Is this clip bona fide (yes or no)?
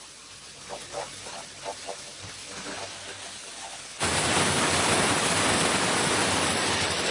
yes